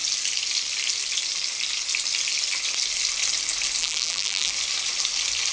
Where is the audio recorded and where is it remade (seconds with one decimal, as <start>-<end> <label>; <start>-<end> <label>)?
0.0-3.8 recorded; 3.8-4.5 remade; 4.5-5.5 recorded